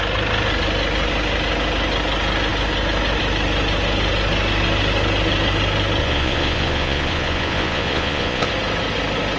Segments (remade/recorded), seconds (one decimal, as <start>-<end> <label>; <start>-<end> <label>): 0.0-6.0 recorded; 6.0-8.5 remade; 8.5-9.4 recorded